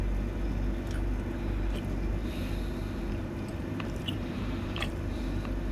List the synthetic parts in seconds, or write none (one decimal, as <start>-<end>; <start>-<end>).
3.5-4.9